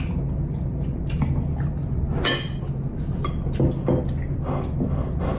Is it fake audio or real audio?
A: real